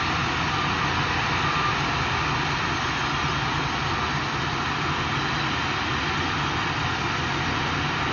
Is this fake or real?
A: real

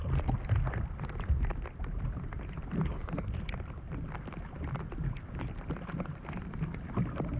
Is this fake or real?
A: real